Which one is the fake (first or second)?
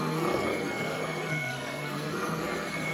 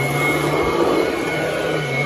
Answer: first